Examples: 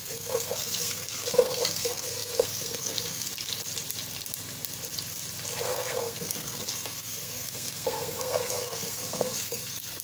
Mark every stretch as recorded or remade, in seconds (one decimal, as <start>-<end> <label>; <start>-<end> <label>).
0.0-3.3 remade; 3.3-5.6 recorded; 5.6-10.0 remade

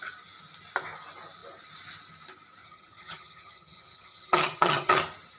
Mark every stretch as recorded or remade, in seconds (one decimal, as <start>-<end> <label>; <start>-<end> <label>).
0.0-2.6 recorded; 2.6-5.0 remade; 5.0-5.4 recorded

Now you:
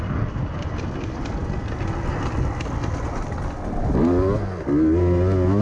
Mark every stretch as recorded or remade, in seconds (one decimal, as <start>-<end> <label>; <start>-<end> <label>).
0.0-5.6 recorded